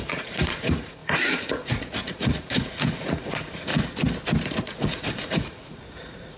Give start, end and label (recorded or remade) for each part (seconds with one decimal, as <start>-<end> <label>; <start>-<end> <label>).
0.0-3.7 remade; 3.7-4.6 recorded; 4.6-6.4 remade